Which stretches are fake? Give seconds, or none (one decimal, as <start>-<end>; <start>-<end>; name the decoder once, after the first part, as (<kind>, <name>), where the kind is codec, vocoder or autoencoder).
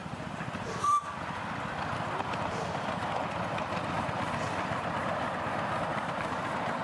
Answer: 0.0-1.2 (vocoder, BigVGAN v2); 5.9-6.8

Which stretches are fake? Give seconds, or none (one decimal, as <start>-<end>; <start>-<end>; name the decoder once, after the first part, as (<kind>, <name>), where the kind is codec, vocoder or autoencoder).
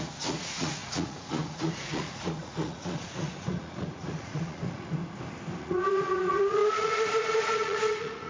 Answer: 0.0-5.0 (vocoder, Vocos); 5.6-8.3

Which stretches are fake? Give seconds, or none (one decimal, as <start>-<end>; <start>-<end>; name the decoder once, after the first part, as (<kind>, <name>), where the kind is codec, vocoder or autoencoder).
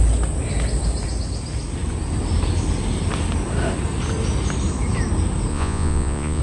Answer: 5.5-6.4 (vocoder, Vocos)